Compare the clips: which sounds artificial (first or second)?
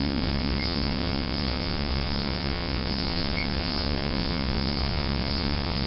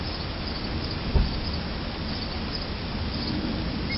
first